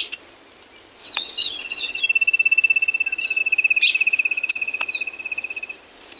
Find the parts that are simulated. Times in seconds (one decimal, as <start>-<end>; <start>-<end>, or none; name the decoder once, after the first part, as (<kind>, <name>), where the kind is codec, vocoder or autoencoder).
1.0-2.0 (vocoder, WaveNeXt)